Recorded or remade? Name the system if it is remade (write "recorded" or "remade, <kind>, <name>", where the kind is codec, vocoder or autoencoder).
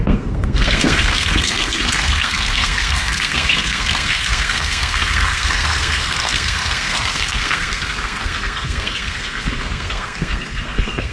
remade, codec, SNAC